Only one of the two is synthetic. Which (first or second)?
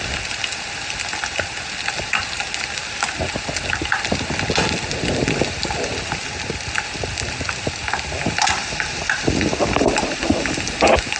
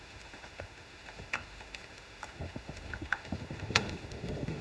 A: second